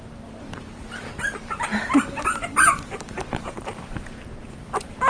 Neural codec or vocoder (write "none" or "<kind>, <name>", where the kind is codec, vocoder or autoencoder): vocoder, BigVGAN v2